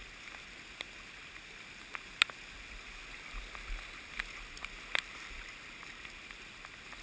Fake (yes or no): no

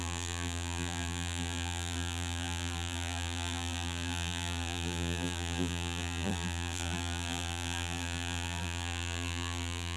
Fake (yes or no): yes